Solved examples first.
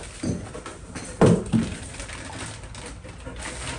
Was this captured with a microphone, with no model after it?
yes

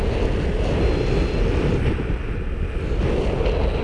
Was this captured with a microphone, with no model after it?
yes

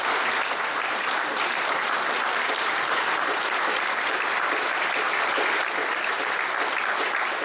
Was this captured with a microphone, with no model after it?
yes